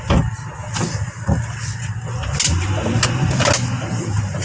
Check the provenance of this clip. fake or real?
real